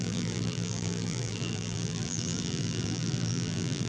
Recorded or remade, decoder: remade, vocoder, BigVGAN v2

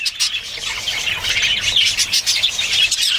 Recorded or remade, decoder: recorded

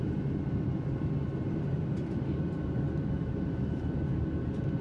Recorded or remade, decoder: recorded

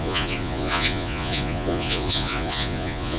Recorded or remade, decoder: remade, vocoder, Vocos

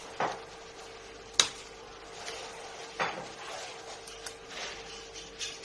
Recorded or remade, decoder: recorded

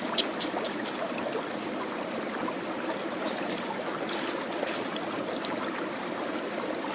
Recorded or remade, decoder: recorded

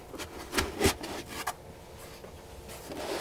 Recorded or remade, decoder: recorded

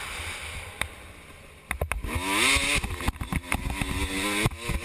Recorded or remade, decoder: recorded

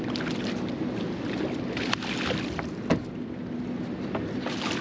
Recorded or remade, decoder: recorded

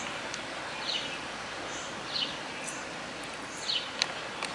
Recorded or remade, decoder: recorded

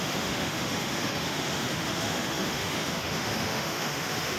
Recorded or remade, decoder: remade, autoencoder, DAC-VAE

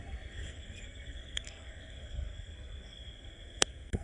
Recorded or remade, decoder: remade, codec, SNAC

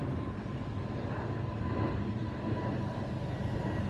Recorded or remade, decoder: recorded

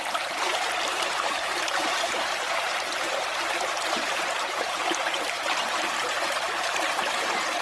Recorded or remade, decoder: remade, vocoder, BigVGAN v2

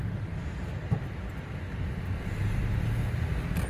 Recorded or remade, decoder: recorded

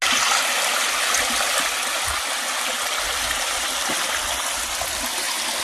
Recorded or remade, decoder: recorded